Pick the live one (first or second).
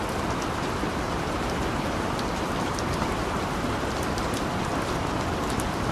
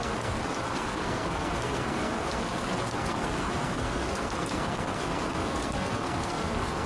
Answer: first